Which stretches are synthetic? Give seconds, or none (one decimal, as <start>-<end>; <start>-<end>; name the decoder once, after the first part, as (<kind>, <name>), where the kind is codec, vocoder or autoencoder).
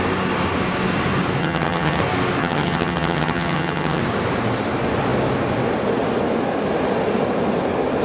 1.4-2.0 (vocoder, HiFi-GAN); 2.4-4.0